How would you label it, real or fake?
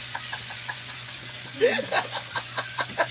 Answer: fake